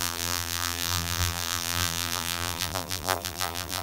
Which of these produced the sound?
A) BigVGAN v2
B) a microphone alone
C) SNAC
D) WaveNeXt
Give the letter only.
A